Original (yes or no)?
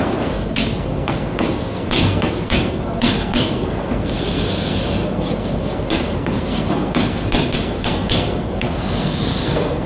no